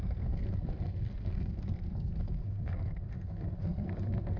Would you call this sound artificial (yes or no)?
yes